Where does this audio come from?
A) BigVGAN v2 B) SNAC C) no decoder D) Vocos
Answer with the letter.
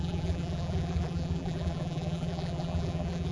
A